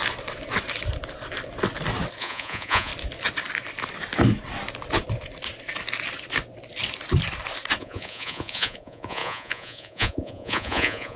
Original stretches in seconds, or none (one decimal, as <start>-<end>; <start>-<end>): 0.0-2.2; 2.9-7.8